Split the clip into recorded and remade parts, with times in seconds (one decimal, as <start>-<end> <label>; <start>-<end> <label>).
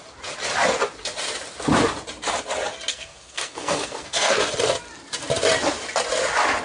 0.0-2.9 recorded; 2.9-4.4 remade; 4.4-6.6 recorded